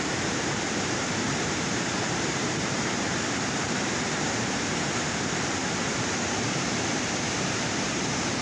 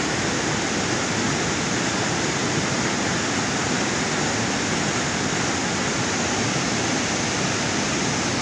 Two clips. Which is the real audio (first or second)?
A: second